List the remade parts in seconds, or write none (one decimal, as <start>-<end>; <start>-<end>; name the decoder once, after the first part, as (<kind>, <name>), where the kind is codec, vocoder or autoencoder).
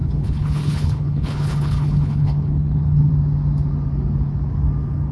0.0-3.1 (codec, HILCodec)